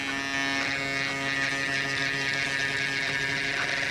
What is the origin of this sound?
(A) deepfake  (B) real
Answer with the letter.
B